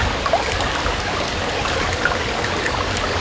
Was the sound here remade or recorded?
remade